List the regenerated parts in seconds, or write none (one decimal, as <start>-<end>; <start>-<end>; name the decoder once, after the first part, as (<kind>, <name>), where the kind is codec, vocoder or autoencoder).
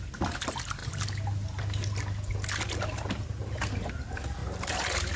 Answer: 0.0-0.8 (vocoder, BigVGAN v2); 3.9-4.4